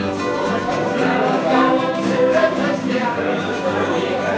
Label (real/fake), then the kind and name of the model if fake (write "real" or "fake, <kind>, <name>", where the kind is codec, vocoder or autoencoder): fake, codec, DAC